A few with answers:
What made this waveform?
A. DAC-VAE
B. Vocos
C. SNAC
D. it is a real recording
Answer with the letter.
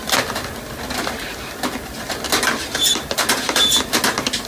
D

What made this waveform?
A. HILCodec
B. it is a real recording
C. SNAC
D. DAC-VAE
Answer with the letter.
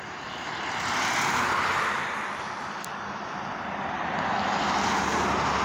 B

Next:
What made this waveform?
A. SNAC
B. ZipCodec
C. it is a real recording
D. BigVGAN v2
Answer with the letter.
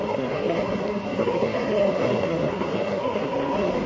A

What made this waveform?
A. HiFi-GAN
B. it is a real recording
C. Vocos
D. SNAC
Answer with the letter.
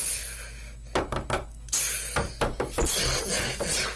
B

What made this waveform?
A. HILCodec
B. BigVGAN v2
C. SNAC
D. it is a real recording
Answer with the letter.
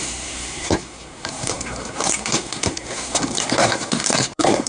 C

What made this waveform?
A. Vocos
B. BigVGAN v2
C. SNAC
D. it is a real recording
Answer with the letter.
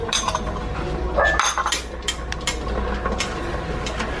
D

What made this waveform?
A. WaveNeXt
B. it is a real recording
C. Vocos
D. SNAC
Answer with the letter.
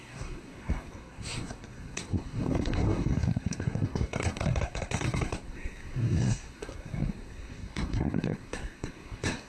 D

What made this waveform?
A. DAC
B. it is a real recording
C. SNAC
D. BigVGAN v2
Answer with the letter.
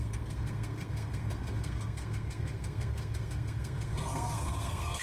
C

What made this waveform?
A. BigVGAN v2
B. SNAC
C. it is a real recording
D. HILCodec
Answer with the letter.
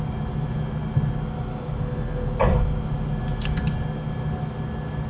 C